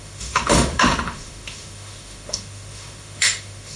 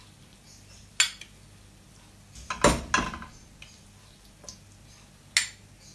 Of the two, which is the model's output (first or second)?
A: first